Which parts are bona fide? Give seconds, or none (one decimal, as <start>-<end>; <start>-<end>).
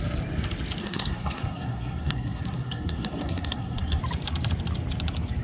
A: 0.0-0.8; 4.0-5.4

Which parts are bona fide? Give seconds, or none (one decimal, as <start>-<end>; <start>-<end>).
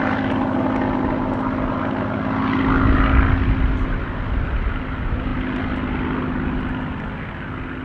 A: 0.0-7.8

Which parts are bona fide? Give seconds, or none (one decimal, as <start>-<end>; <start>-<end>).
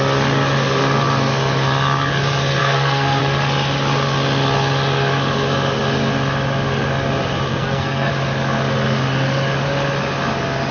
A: 0.0-2.6; 3.2-7.5; 8.1-10.7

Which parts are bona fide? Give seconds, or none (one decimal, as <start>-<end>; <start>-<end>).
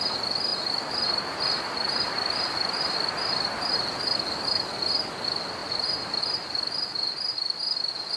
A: 0.0-0.5; 3.8-5.6; 6.2-8.2